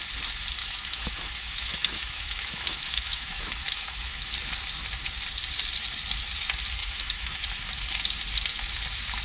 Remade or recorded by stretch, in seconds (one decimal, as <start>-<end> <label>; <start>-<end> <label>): 0.0-0.6 recorded; 0.6-4.3 remade; 4.3-6.8 recorded; 6.8-7.6 remade; 7.6-9.2 recorded